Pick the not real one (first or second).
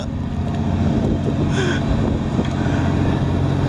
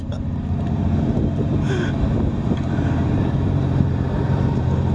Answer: second